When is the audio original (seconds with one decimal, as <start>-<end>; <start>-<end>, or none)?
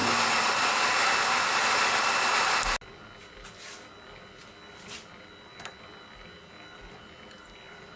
0.0-8.0